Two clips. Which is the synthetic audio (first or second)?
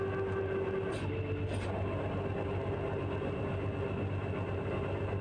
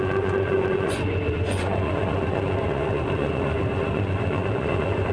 second